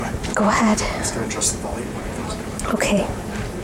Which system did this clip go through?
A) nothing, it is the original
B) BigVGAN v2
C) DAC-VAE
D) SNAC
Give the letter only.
B